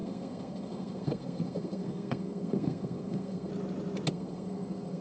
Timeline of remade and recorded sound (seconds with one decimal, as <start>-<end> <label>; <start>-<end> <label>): 0.0-3.5 remade; 3.5-4.1 recorded; 4.1-5.0 remade